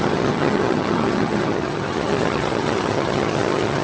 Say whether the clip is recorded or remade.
remade